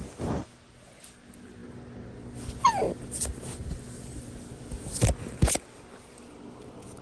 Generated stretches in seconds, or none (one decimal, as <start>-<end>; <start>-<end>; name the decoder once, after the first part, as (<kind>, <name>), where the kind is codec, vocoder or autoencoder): none

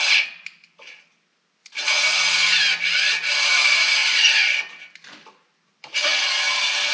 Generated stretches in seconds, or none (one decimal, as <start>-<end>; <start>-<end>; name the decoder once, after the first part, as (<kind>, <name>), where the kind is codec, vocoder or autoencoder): none

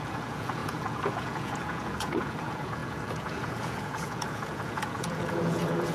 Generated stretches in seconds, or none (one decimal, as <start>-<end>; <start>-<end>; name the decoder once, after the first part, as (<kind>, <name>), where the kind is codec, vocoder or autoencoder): 0.0-5.9 (vocoder, Vocos)

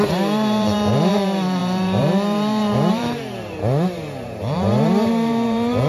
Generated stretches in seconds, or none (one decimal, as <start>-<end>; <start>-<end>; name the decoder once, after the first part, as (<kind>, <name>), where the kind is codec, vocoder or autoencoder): 0.0-5.9 (vocoder, BigVGAN v2)

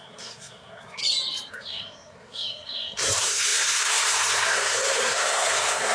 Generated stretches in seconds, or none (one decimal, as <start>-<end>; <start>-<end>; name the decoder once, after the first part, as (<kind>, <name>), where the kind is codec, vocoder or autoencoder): 0.0-1.0 (codec, SNAC); 1.5-5.9

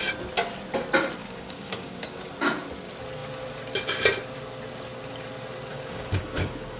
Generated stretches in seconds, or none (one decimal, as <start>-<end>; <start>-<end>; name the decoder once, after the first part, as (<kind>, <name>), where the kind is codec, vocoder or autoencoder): 1.2-2.3 (codec, DAC); 5.7-6.8

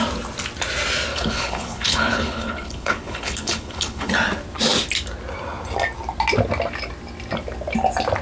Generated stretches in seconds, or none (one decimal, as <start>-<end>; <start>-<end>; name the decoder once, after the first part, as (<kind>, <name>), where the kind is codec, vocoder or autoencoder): 1.1-4.1 (codec, HILCodec)